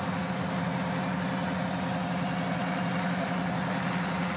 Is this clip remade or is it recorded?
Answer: recorded